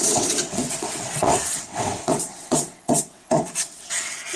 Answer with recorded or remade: remade